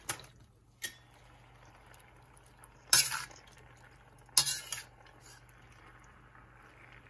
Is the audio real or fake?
real